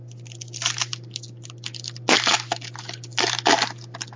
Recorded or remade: recorded